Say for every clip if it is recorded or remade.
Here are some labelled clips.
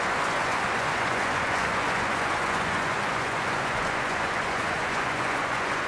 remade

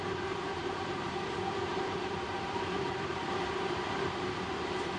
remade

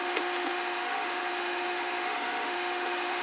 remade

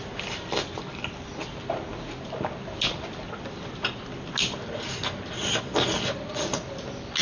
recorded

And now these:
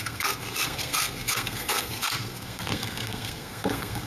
remade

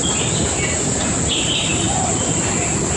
recorded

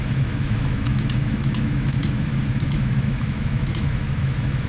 remade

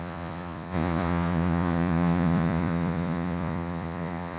remade